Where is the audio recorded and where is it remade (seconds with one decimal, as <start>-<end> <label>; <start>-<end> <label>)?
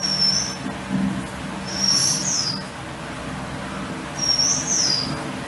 0.0-5.5 recorded